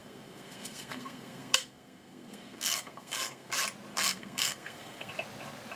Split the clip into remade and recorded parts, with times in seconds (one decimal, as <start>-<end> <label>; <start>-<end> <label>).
0.0-3.5 remade; 3.5-3.9 recorded; 3.9-5.1 remade; 5.1-5.8 recorded

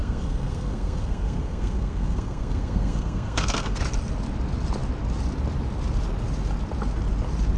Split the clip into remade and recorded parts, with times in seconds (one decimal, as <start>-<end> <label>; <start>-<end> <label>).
0.0-3.8 remade; 3.8-7.6 recorded